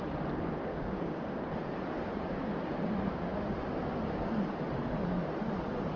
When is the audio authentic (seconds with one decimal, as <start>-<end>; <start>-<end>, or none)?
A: 0.0-0.7; 1.3-6.0